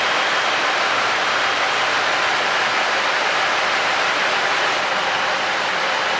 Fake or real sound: real